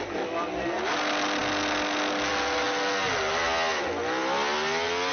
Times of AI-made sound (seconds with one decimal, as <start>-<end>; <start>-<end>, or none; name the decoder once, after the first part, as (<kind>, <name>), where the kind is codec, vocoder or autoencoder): none